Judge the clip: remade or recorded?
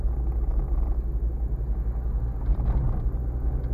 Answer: recorded